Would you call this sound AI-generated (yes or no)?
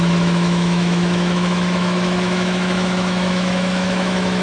yes